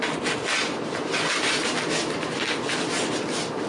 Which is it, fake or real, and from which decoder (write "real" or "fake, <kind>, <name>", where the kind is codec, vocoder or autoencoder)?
real